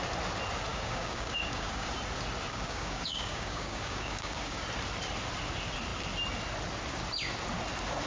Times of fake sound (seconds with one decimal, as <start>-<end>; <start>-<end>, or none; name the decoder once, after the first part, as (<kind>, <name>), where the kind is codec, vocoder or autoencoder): 0.7-1.9 (codec, DAC); 2.5-4.6